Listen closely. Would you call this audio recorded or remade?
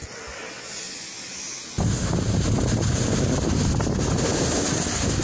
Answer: recorded